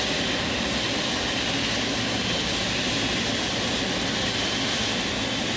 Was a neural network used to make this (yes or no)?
no